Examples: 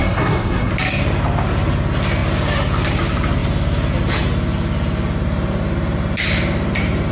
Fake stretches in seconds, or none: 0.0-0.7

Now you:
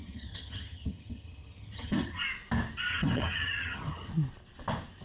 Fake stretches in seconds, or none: 0.0-2.2; 2.9-4.1

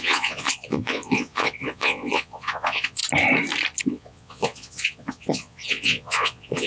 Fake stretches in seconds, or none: 0.0-3.0; 3.8-6.7

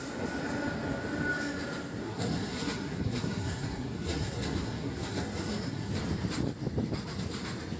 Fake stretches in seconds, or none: 2.0-5.9

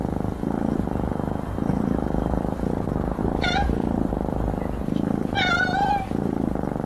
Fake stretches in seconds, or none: 1.7-2.4; 3.2-4.5